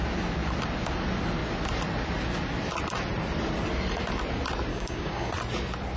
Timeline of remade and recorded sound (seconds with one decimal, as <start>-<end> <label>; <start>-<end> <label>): 0.0-4.7 recorded; 4.7-5.3 remade; 5.3-6.0 recorded